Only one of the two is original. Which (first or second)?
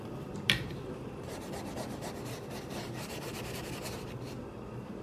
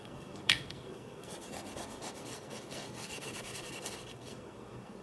first